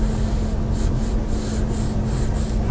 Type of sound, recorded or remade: recorded